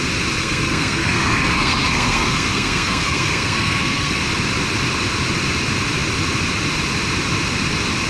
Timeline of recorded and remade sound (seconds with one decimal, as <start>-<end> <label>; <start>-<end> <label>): 0.0-0.4 recorded; 0.4-4.2 remade; 4.2-8.1 recorded